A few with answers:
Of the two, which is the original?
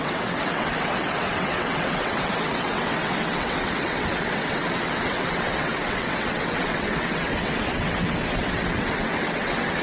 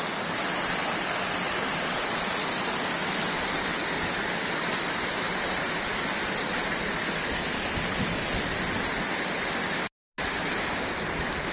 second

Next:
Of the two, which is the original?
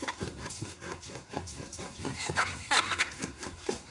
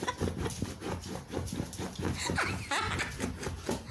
second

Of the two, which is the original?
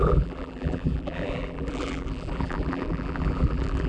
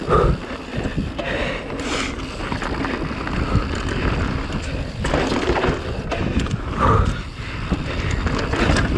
second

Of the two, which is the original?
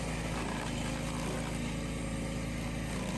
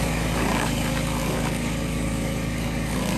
first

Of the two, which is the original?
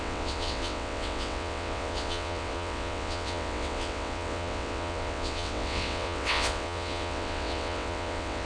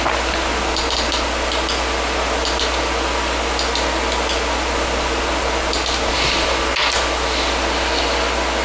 second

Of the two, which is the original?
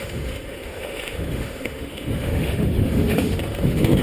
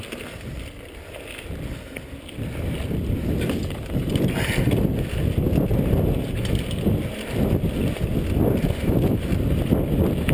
second